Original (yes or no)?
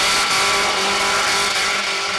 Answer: yes